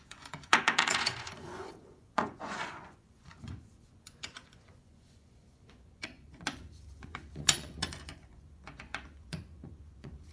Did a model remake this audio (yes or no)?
yes